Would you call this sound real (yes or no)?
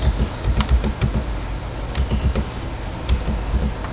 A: yes